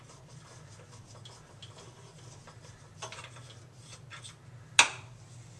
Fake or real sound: real